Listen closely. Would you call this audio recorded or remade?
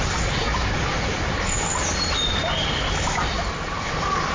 recorded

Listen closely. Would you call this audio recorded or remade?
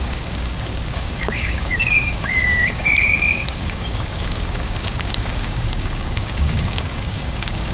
remade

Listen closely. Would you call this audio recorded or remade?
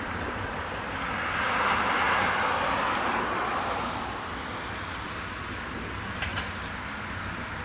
recorded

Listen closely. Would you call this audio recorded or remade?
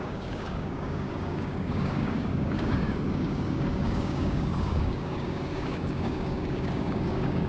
remade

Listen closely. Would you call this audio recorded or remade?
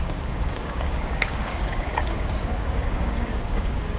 remade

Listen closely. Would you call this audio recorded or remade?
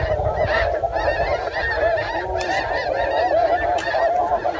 recorded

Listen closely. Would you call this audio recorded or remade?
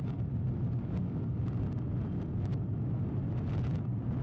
recorded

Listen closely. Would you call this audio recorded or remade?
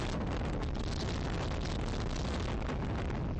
recorded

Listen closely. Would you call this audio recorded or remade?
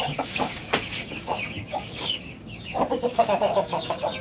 remade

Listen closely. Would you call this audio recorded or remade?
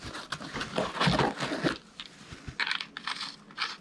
recorded